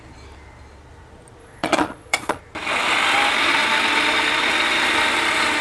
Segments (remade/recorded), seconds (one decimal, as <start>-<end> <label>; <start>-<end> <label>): 0.0-1.4 recorded; 1.4-2.4 remade; 2.4-5.6 recorded